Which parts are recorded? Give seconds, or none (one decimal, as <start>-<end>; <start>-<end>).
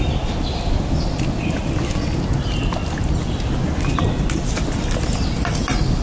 0.0-6.0